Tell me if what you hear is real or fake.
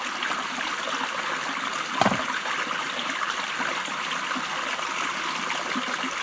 real